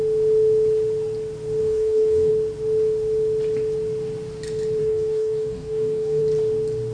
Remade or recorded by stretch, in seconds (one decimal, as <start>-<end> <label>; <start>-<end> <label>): 0.0-1.6 recorded; 1.6-2.3 remade; 2.3-4.8 recorded; 4.8-6.2 remade; 6.2-6.9 recorded